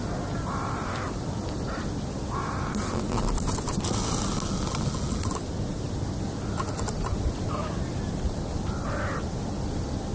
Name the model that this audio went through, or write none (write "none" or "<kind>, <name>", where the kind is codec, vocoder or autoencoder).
none